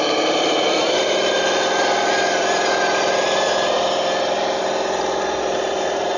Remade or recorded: remade